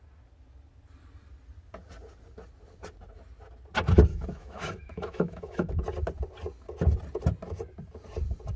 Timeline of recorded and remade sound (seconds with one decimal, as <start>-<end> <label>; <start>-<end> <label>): 0.0-4.1 recorded; 4.1-5.7 remade; 5.7-8.6 recorded